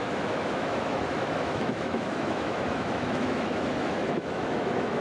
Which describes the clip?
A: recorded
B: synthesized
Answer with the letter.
B